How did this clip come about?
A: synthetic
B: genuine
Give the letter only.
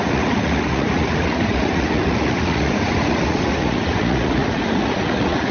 A